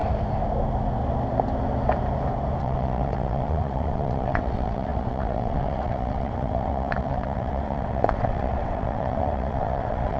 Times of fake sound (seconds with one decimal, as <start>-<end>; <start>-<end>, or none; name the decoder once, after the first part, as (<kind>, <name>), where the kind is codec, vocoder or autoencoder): 2.6-10.2 (vocoder, WaveNeXt)